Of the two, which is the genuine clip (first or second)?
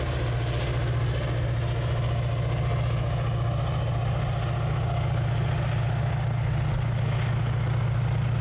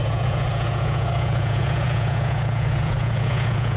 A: first